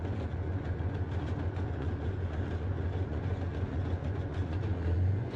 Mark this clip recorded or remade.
remade